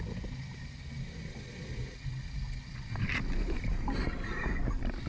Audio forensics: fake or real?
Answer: real